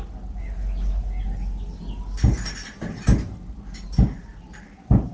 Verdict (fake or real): real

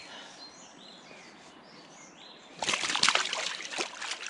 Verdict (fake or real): real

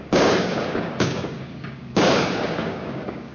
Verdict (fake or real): fake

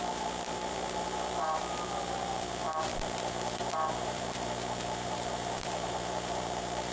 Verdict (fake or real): fake